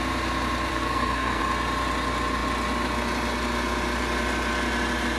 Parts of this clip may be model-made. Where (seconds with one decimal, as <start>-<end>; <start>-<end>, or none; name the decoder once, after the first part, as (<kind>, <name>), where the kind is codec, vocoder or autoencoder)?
0.7-1.4 (codec, SNAC)